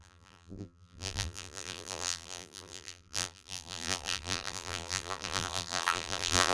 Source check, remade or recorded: remade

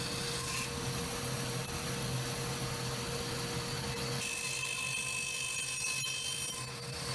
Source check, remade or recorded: recorded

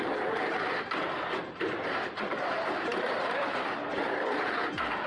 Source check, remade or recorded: remade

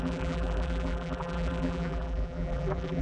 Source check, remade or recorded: remade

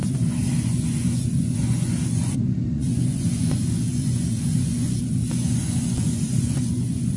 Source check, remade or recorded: remade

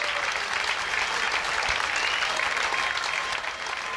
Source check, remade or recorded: recorded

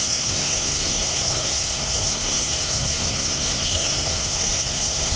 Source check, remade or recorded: remade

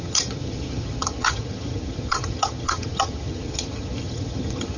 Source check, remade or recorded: remade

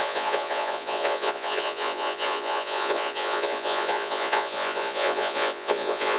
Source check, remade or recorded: remade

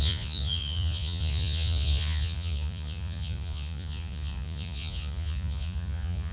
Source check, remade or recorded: remade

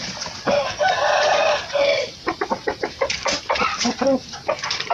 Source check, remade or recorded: remade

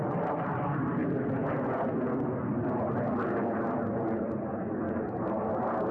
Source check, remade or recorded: recorded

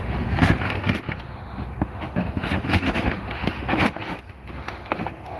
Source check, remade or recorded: remade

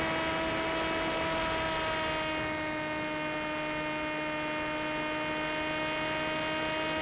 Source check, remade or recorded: recorded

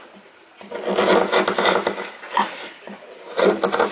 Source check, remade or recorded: recorded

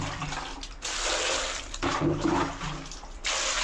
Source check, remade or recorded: recorded